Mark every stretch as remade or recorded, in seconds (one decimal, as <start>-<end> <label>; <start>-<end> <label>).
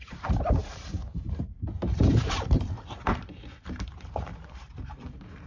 0.0-5.5 remade